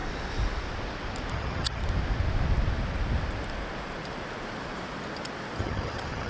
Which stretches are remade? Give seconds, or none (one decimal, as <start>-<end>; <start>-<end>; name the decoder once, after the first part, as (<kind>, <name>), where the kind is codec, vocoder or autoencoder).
1.3-1.8 (vocoder, HiFi-GAN); 5.6-6.3